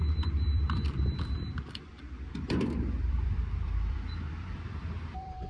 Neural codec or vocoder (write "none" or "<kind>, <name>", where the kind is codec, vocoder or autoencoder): vocoder, BigVGAN v2